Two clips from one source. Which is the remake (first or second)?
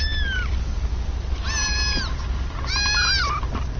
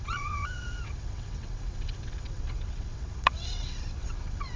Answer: second